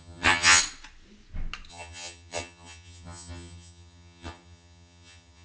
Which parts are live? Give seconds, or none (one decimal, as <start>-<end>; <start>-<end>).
0.6-1.7

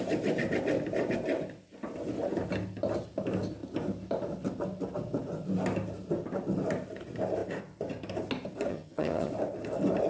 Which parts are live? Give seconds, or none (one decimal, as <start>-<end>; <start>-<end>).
0.0-8.7; 9.3-10.1

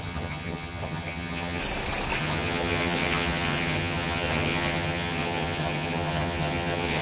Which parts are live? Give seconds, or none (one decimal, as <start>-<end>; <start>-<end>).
1.6-2.2

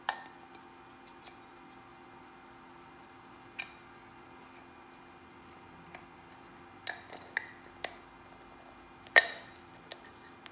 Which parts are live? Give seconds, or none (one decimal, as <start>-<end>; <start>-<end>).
0.0-10.5

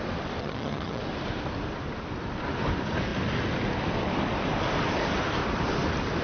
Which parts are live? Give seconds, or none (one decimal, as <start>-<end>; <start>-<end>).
0.0-0.4; 1.0-6.2

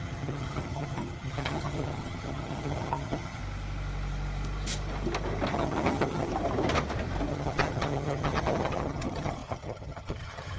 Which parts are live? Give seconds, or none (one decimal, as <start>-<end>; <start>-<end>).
3.4-5.5; 6.3-7.3

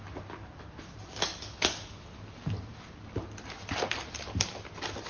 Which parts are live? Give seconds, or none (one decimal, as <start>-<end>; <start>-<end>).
0.0-5.1

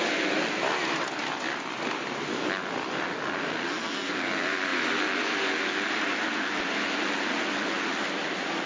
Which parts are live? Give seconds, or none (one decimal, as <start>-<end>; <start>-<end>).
0.0-8.7